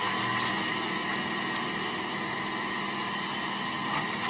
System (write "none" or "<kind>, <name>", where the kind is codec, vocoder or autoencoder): none